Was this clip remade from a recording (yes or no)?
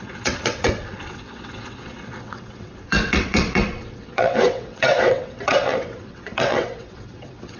yes